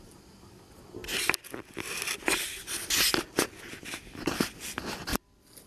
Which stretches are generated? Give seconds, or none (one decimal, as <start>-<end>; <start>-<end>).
0.0-1.0; 1.9-5.1